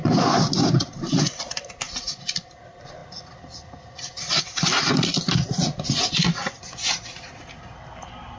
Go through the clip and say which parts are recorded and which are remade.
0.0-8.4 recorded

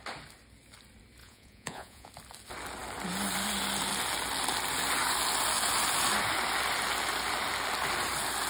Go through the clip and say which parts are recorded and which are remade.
0.0-1.2 recorded; 1.2-2.1 remade; 2.1-8.5 recorded

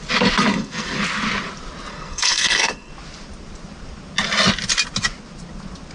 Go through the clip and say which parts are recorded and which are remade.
0.0-0.5 recorded; 0.5-1.0 remade; 1.0-1.9 recorded; 1.9-2.9 remade; 2.9-5.9 recorded